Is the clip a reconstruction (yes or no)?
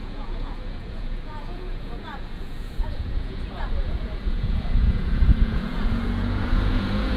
yes